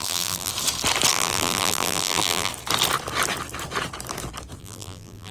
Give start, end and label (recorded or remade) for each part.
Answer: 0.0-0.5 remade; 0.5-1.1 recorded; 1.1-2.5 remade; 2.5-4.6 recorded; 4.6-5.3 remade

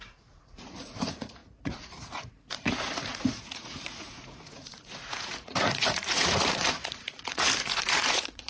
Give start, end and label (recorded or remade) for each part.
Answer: 0.0-8.5 remade

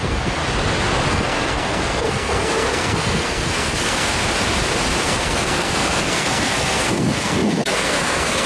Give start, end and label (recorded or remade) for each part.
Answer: 0.0-0.4 remade; 0.4-1.1 recorded; 1.1-4.2 remade; 4.2-5.0 recorded; 5.0-8.5 remade

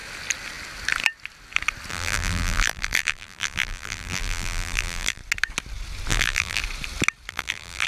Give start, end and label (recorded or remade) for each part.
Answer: 0.0-1.9 recorded; 1.9-5.2 remade; 5.2-6.1 recorded; 6.1-6.6 remade; 6.6-7.3 recorded; 7.3-7.9 remade

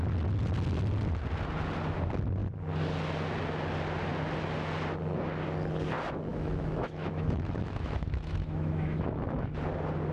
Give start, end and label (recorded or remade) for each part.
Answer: 0.0-6.3 recorded; 6.3-9.6 remade; 9.6-10.1 recorded